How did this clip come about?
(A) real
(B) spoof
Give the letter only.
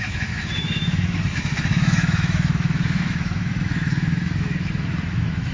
B